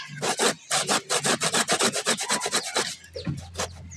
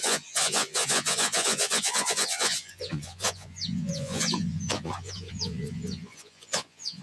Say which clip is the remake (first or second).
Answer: second